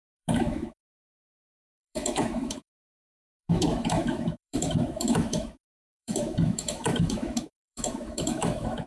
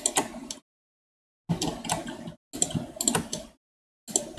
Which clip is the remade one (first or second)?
first